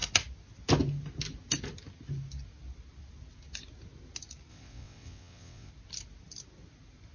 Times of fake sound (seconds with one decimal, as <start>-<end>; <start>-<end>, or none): 4.5-5.7